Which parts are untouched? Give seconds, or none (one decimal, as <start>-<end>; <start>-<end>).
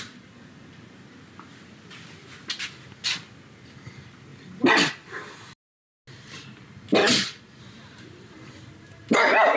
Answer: 0.0-7.0; 7.6-9.6